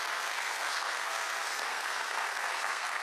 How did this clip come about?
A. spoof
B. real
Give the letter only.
A